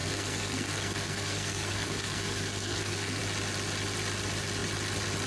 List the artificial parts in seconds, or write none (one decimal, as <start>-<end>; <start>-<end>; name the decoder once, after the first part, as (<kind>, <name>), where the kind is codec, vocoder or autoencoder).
0.0-3.2 (codec, SNAC)